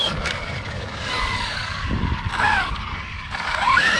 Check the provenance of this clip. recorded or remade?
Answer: remade